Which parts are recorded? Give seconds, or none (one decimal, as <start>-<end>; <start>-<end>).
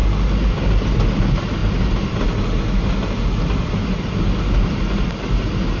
0.0-5.8